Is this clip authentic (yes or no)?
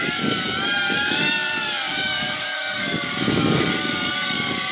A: no